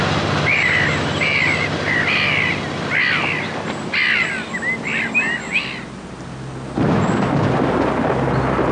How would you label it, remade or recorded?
recorded